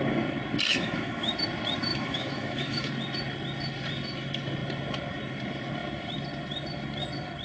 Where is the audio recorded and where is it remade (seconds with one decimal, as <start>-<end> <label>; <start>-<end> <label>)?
0.0-0.7 recorded; 0.7-1.3 remade; 1.3-1.9 recorded; 1.9-2.9 remade; 2.9-7.4 recorded